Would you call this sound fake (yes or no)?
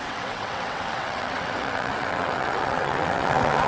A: yes